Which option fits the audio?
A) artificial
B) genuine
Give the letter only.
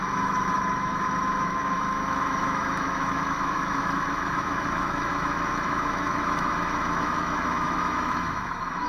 A